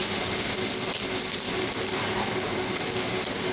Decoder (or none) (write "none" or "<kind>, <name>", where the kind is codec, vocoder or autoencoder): none